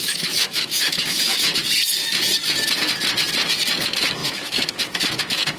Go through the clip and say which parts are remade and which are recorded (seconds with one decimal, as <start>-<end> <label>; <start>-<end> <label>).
0.0-1.6 remade; 1.6-3.8 recorded; 3.8-5.6 remade